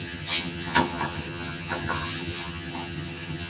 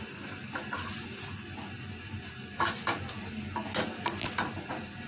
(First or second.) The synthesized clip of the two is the first